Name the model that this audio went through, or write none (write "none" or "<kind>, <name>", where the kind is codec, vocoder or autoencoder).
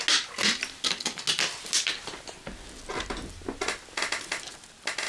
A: none